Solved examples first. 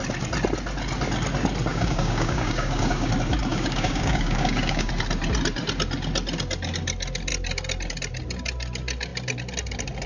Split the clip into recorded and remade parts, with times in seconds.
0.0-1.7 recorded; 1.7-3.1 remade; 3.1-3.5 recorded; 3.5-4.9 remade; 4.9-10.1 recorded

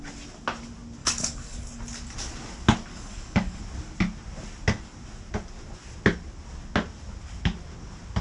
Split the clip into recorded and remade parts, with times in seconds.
0.0-1.0 recorded; 1.0-1.8 remade; 1.8-2.9 recorded; 2.9-3.6 remade; 3.6-8.2 recorded

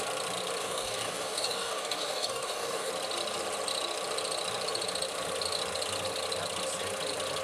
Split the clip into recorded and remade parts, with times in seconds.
0.0-0.6 recorded; 0.6-2.9 remade; 2.9-7.4 recorded

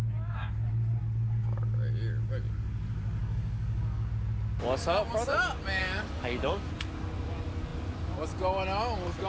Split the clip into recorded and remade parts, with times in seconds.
0.0-3.2 recorded; 3.2-4.1 remade; 4.1-5.8 recorded; 5.8-6.7 remade; 6.7-9.3 recorded

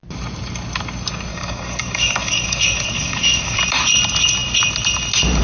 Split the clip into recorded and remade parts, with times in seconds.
0.0-1.3 recorded; 1.3-3.6 remade; 3.6-5.4 recorded

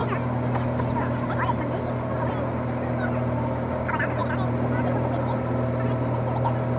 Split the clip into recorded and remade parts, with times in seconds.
0.0-6.8 recorded